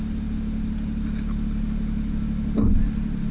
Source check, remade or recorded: recorded